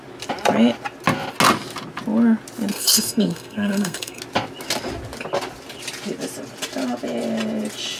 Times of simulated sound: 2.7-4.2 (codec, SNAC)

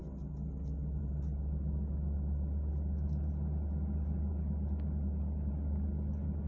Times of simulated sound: none

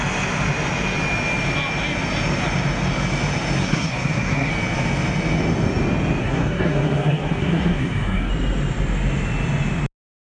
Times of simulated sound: 3.6-4.5 (codec, SNAC); 6.2-8.3